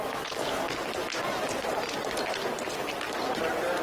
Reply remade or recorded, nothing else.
recorded